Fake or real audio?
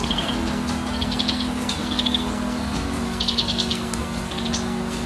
fake